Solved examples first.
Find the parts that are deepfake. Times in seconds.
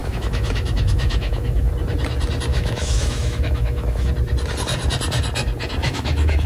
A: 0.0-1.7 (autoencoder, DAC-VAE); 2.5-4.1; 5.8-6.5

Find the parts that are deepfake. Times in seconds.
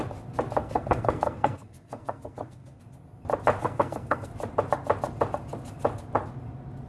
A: 0.6-2.8 (codec, SNAC); 3.6-4.3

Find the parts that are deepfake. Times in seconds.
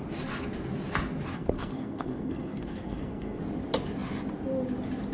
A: 1.3-3.4 (codec, SNAC)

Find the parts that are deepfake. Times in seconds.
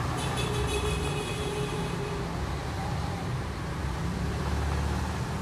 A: 1.3-2.1 (vocoder, BigVGAN v2); 2.6-4.4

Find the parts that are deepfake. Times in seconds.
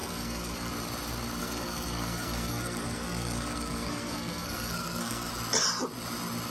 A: 0.0-0.7 (codec, SNAC); 1.4-5.3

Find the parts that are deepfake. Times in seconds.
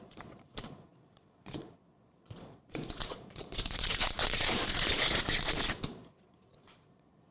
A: 0.0-7.3 (vocoder, Vocos)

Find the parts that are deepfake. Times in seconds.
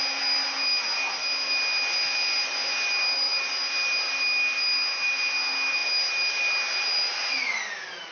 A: none